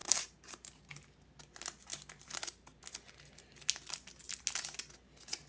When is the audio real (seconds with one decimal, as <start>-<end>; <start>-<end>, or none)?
0.9-1.9; 2.8-5.5